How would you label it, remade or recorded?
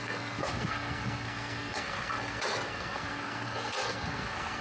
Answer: remade